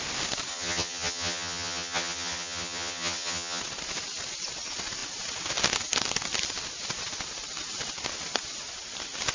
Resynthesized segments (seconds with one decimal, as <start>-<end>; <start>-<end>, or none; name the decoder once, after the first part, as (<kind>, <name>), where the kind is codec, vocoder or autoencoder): 0.5-3.6 (vocoder, HiFi-GAN)